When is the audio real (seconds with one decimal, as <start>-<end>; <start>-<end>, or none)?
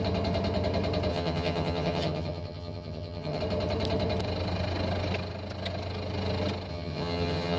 0.0-1.1; 3.4-6.7